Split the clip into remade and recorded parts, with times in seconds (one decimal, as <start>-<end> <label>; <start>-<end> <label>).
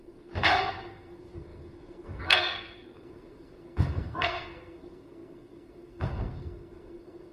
0.0-7.3 remade